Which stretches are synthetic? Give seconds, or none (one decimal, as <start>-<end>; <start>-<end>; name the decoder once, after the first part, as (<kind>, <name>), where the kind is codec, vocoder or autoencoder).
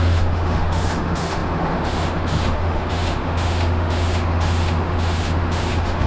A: 0.0-6.1 (autoencoder, DAC-VAE)